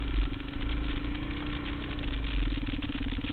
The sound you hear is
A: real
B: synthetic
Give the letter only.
A